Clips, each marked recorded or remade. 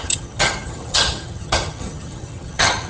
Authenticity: remade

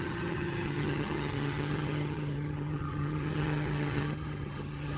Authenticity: remade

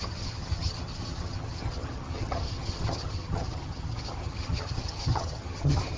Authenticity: remade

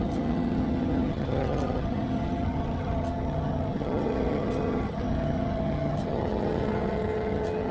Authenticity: remade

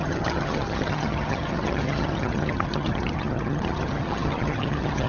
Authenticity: remade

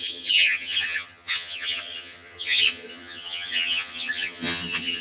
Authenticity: remade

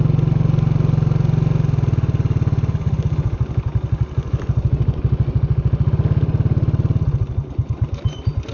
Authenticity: recorded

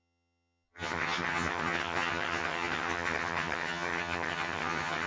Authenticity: remade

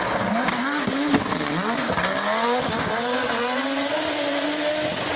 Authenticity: recorded